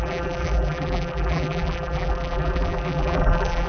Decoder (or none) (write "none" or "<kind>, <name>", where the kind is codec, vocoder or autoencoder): vocoder, BigVGAN v2